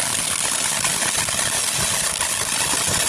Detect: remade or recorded recorded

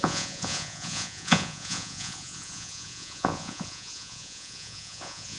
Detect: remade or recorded remade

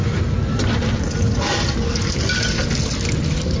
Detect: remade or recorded recorded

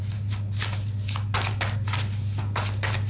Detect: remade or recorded recorded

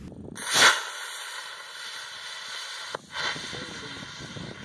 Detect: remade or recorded recorded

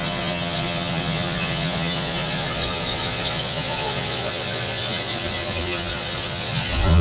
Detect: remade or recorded remade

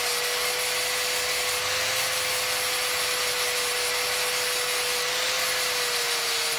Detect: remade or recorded recorded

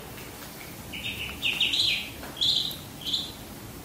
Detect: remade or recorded recorded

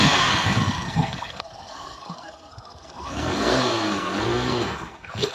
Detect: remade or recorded remade